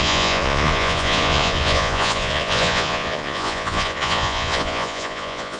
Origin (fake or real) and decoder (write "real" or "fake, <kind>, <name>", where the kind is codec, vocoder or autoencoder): fake, vocoder, Vocos